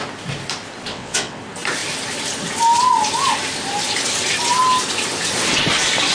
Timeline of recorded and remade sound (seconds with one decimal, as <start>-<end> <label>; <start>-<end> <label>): 0.0-0.9 recorded; 0.9-1.4 remade; 1.4-6.1 recorded